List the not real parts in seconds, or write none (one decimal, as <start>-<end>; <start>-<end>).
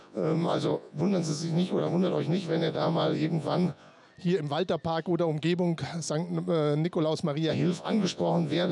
0.0-3.9; 7.5-8.7